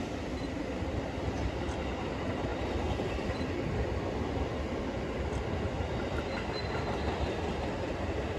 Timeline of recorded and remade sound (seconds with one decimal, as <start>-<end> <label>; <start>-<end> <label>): 0.0-8.4 recorded